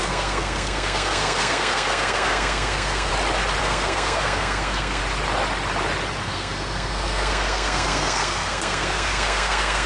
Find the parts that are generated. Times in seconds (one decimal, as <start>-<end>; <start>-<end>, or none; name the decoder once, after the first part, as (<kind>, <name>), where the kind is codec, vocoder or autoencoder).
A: 0.0-3.1 (codec, SNAC); 3.6-5.0; 6.2-9.9